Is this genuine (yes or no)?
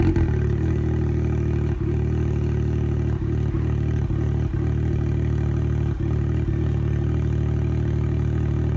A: yes